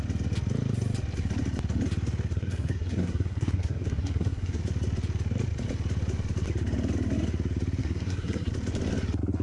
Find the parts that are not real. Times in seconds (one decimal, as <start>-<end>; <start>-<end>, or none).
2.3-4.6; 7.8-8.5